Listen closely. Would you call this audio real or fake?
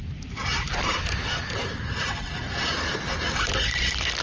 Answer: real